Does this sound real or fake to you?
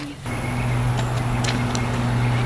real